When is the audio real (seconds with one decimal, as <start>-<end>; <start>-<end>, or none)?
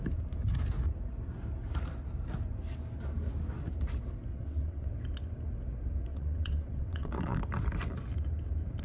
0.0-4.3; 4.9-6.1; 7.4-8.8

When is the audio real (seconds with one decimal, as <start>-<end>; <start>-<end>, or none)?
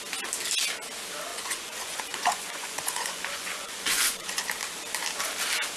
0.0-1.3; 4.4-5.8